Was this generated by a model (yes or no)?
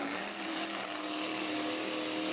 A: no